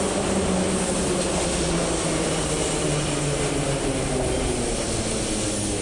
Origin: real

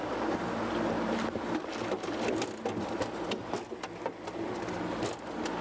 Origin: real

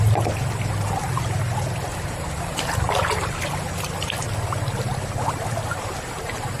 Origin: real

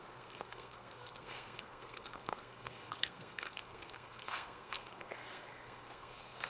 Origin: fake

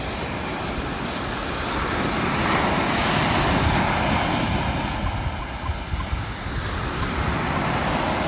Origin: real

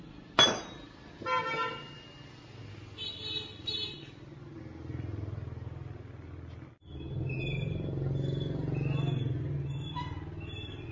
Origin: real